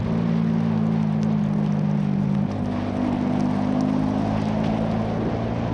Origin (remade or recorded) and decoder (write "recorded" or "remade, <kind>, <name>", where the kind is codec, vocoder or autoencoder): recorded